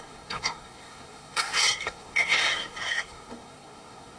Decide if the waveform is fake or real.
fake